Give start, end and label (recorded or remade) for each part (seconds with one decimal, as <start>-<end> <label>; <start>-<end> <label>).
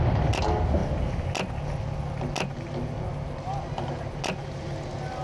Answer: 0.0-5.2 recorded